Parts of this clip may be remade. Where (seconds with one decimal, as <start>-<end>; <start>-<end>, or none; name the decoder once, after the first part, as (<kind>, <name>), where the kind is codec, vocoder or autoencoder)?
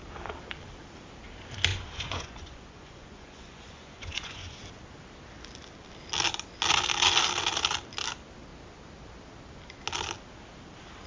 1.7-4.6 (vocoder, Vocos)